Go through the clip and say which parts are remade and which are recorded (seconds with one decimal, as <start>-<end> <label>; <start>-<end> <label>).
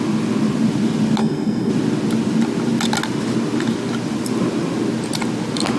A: 0.0-1.2 recorded; 1.2-1.7 remade; 1.7-5.8 recorded